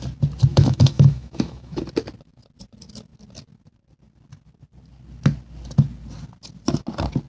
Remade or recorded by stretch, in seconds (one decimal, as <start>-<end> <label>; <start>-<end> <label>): 0.0-0.5 recorded; 0.5-1.8 remade; 1.8-7.3 recorded